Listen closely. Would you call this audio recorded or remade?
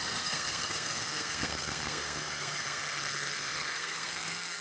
remade